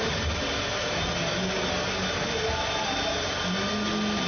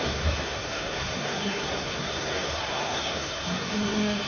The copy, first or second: second